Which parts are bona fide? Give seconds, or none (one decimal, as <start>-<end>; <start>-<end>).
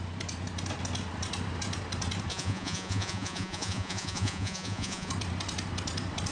0.0-2.3; 5.1-6.3